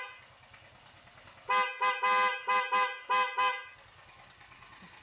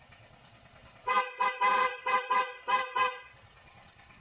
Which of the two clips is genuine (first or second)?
first